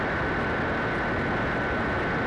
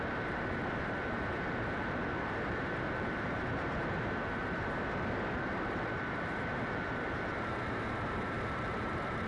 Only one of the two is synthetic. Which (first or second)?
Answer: second